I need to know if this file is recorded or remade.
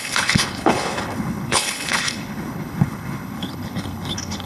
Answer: remade